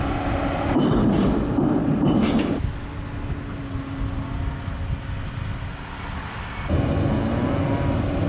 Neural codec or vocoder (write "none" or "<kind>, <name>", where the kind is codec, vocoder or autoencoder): none